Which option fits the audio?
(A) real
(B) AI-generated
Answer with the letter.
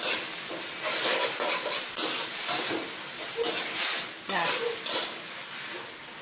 A